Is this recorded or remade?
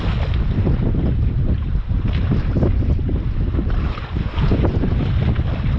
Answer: recorded